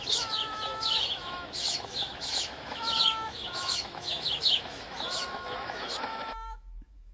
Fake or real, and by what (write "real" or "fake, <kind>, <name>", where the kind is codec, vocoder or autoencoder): fake, autoencoder, DAC-VAE